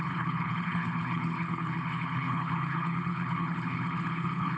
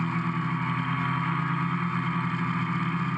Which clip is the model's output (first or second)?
first